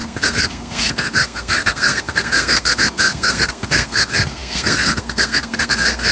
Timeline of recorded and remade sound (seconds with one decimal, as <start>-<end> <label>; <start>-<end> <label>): 0.0-6.1 remade